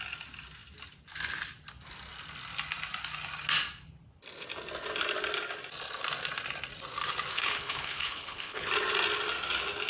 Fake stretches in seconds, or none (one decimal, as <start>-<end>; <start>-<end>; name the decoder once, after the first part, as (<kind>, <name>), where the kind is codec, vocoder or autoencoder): 7.3-8.7 (codec, HILCodec)